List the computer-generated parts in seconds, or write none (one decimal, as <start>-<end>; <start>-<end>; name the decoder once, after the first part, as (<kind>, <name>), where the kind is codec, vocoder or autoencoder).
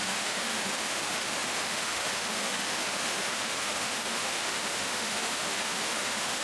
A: 0.0-6.4 (autoencoder, DAC-VAE)